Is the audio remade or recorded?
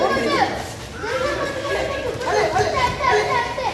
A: recorded